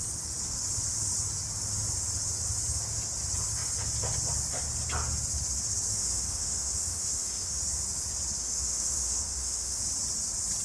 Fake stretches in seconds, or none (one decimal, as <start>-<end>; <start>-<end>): 5.9-7.6; 8.4-9.8